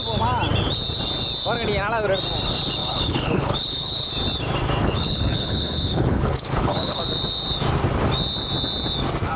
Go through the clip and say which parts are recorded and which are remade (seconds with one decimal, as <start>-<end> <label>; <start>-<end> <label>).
0.0-2.8 recorded; 2.8-4.1 remade; 4.1-4.9 recorded; 4.9-7.0 remade; 7.0-9.4 recorded